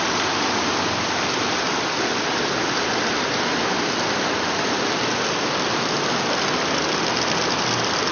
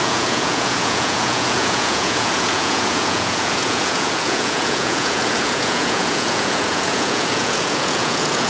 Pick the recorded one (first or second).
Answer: first